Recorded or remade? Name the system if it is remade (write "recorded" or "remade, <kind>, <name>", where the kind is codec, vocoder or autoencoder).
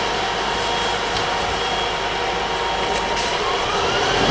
recorded